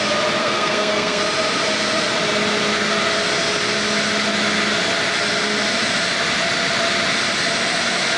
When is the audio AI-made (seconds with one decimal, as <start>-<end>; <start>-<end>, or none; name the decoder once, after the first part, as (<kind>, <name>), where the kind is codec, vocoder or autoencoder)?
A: 0.4-1.2 (codec, SNAC)